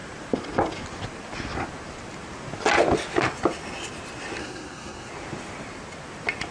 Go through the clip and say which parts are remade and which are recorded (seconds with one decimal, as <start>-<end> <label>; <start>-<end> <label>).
0.0-4.4 recorded; 4.4-5.1 remade; 5.1-6.5 recorded